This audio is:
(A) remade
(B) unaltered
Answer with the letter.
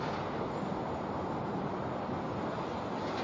B